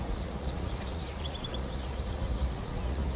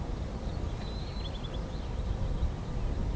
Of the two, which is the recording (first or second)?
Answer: second